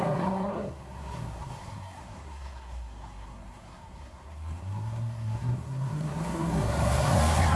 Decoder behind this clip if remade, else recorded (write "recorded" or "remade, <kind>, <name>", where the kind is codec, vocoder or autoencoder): remade, codec, SNAC